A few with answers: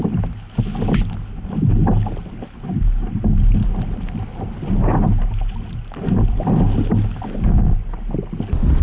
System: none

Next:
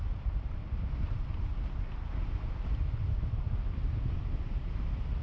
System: none